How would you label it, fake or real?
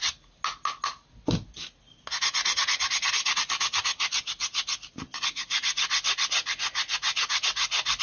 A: real